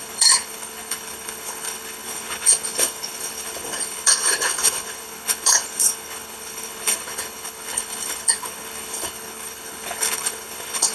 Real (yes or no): no